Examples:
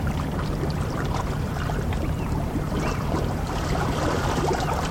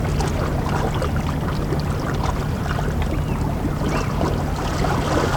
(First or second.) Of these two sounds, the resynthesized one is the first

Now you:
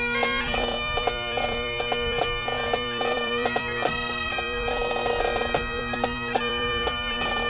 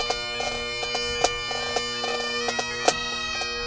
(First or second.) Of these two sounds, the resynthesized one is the first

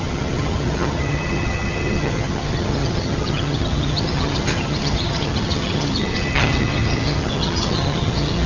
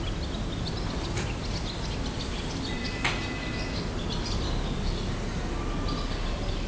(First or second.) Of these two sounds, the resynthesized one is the first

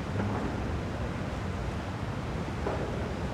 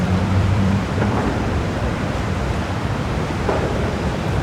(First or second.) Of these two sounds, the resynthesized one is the second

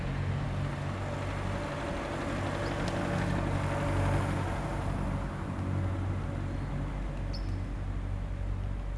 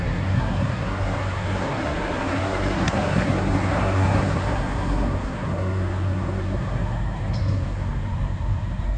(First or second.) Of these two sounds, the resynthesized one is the second